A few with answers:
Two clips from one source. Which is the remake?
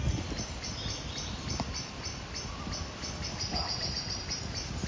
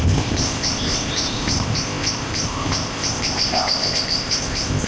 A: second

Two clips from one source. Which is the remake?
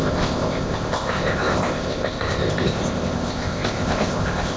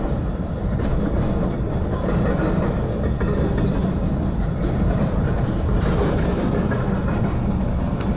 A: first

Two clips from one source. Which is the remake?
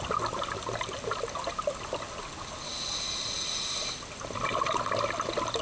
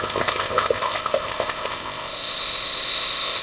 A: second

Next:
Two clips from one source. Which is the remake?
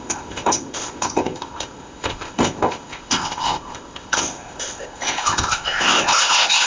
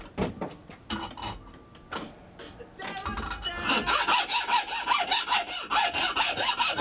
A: first